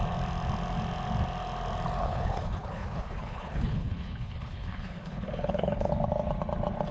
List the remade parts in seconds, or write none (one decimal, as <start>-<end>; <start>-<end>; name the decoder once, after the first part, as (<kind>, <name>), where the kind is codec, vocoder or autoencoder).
2.0-5.9 (codec, HILCodec)